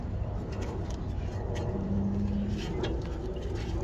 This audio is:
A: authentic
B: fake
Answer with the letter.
A